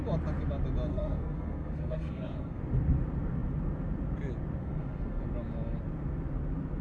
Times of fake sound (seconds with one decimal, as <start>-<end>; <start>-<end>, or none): 0.9-2.6; 4.6-5.2